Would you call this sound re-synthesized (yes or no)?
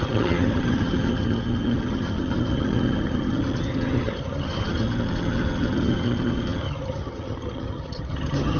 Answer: yes